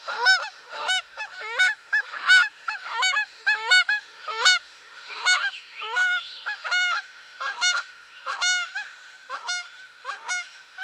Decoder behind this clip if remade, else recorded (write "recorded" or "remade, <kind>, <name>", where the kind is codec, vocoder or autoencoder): remade, autoencoder, DAC-VAE